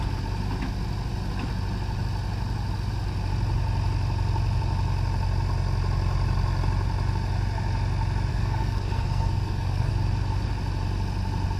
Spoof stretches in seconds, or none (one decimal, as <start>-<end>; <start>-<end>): 8.3-9.9